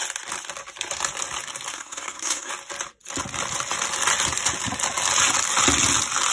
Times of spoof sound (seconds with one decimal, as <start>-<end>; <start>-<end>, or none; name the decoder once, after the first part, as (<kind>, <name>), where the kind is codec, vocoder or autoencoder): 1.7-2.5 (codec, SNAC)